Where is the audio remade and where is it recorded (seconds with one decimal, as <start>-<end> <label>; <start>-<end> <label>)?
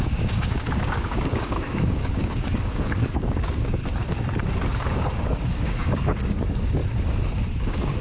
0.0-3.8 remade; 3.8-4.7 recorded; 4.7-6.8 remade; 6.8-7.6 recorded; 7.6-8.0 remade